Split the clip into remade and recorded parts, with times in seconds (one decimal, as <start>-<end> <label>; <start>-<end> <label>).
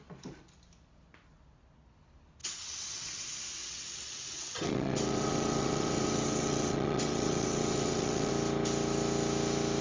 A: 0.0-2.4 recorded; 2.4-3.2 remade; 3.2-3.6 recorded; 3.6-8.3 remade; 8.3-9.8 recorded